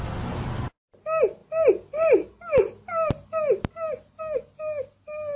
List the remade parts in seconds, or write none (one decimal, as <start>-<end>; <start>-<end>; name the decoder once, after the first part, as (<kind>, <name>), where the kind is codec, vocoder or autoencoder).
none

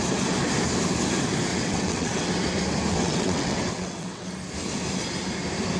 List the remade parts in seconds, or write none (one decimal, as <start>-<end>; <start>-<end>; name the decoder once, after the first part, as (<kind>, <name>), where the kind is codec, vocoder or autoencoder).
1.5-2.3 (vocoder, WaveNeXt); 2.9-4.3

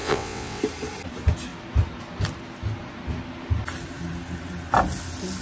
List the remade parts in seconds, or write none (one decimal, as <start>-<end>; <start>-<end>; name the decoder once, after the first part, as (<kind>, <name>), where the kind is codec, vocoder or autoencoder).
0.0-0.6 (vocoder, WaveNeXt)

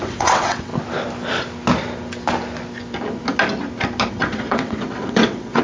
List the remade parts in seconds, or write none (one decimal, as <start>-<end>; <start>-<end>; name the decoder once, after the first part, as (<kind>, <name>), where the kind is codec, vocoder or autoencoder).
0.0-0.7 (vocoder, WaveNeXt); 4.1-5.6

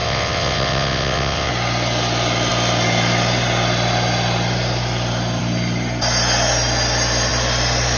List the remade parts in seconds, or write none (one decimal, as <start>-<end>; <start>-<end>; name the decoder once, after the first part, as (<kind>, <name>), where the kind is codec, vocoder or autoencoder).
0.0-1.5 (vocoder, WaveNeXt)

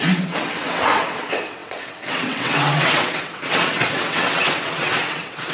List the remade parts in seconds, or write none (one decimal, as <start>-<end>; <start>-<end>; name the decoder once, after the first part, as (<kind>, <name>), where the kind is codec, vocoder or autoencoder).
0.0-5.5 (vocoder, WaveNeXt)

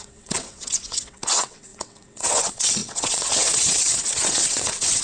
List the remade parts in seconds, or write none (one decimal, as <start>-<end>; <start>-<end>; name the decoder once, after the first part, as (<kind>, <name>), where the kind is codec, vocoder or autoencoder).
0.0-5.0 (vocoder, WaveNeXt)

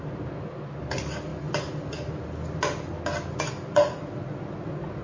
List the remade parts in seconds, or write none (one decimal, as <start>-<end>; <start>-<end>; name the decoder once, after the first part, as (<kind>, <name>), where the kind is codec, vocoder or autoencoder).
none